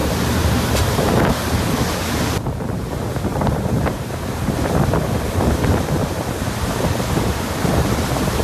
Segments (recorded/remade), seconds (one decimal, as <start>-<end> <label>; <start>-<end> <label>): 0.0-1.1 remade; 1.1-3.3 recorded; 3.3-4.9 remade; 4.9-8.4 recorded